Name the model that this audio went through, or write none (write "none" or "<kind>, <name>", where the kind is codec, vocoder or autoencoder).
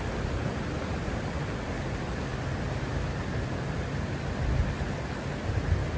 none